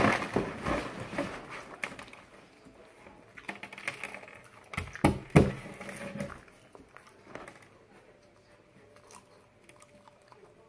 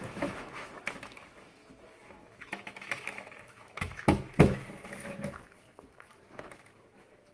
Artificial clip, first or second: second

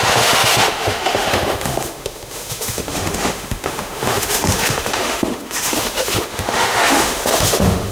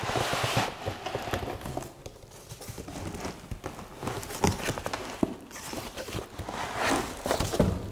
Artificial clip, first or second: first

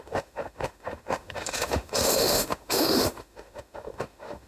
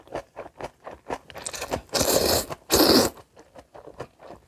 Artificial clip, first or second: first